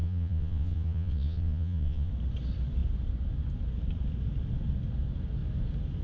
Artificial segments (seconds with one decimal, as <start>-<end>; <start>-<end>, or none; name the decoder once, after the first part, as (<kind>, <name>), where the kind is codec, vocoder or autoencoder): 0.0-2.1 (vocoder, Vocos)

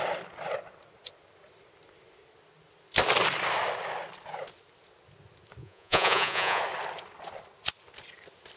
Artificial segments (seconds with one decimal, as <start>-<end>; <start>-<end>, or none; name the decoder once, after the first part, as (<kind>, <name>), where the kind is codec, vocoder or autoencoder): 5.6-6.6 (vocoder, Vocos)

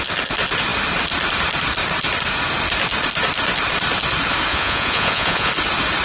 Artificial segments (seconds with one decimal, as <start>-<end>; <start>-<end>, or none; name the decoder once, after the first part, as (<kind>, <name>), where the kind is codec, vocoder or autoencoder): 4.5-5.5 (vocoder, Vocos)

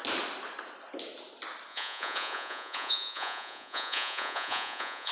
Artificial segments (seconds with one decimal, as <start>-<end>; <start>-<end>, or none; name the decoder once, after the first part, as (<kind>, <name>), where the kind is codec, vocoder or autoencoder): 1.7-5.1 (vocoder, Vocos)

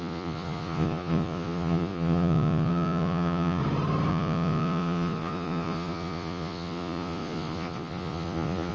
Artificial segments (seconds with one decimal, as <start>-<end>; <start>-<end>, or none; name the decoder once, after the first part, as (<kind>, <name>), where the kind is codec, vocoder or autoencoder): 0.0-3.6 (vocoder, Vocos); 4.1-8.7

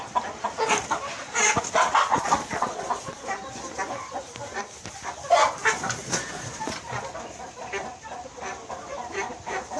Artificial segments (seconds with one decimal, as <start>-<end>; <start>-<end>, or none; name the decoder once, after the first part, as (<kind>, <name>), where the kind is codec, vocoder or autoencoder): 2.1-3.3 (vocoder, Vocos); 6.0-6.8

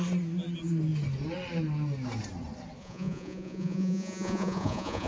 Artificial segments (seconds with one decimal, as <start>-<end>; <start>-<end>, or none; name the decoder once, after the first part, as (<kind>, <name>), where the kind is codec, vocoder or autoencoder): 2.8-5.1 (vocoder, Vocos)